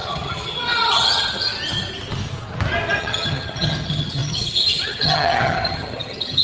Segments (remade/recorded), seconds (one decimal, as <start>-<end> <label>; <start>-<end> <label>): 0.0-1.5 remade; 1.5-3.0 recorded; 3.0-6.4 remade